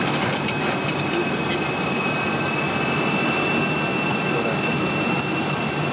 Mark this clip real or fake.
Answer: real